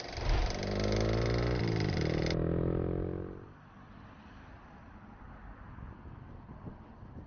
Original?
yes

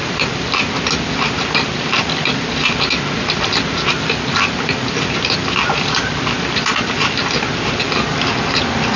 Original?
yes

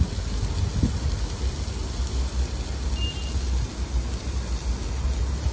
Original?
yes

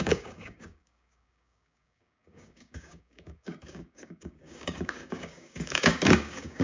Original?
no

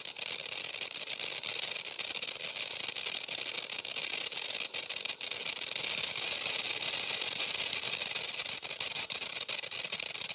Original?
yes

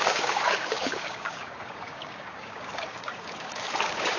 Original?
no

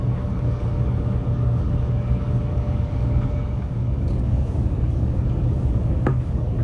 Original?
no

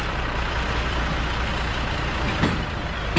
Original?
yes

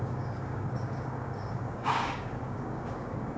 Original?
no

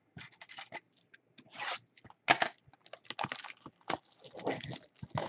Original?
yes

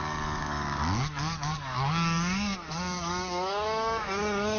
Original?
no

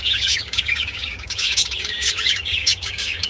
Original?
no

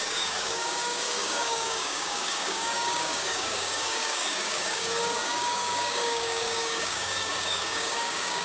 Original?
no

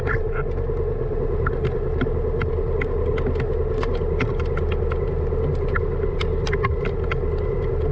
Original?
yes